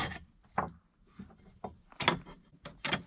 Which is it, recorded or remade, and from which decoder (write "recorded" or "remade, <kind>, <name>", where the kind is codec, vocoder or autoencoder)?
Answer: recorded